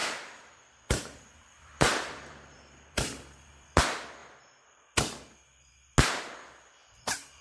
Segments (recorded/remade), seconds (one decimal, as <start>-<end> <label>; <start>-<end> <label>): 0.0-3.8 remade; 3.8-6.8 recorded; 6.8-7.4 remade

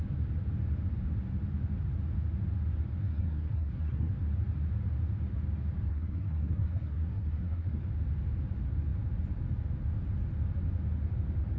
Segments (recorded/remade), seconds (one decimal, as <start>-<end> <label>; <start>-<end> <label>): 0.0-3.0 recorded; 3.0-4.1 remade; 4.1-5.9 recorded; 5.9-7.8 remade; 7.8-11.6 recorded

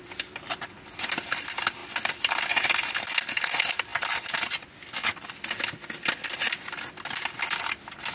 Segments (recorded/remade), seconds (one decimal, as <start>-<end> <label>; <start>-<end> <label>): 0.0-8.1 recorded

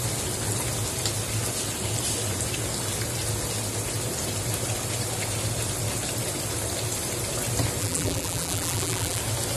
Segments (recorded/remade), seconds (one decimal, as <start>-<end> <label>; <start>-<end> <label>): 0.0-7.8 recorded; 7.8-9.2 remade; 9.2-9.6 recorded

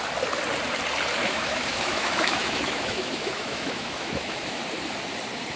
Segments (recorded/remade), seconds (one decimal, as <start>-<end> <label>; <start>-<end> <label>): 0.0-1.2 recorded; 1.2-4.6 remade; 4.6-5.6 recorded

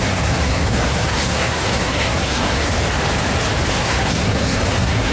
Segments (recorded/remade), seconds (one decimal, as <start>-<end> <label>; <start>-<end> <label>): 0.0-2.7 remade; 2.7-3.7 recorded; 3.7-5.1 remade

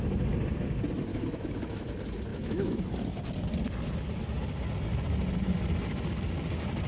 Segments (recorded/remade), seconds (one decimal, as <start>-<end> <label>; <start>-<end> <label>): 0.0-1.1 recorded; 1.1-1.9 remade; 1.9-2.3 recorded; 2.3-2.8 remade; 2.8-6.9 recorded

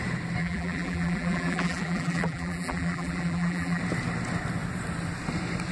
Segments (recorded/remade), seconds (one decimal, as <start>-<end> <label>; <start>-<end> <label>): 0.0-0.4 recorded; 0.4-3.8 remade; 3.8-5.7 recorded